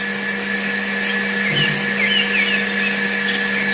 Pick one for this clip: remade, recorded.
recorded